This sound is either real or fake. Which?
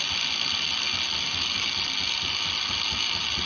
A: real